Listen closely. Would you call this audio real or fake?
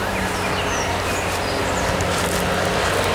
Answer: real